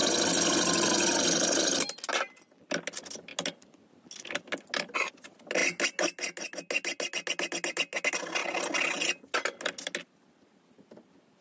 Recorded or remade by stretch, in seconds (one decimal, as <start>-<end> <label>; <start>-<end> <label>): 0.0-11.4 recorded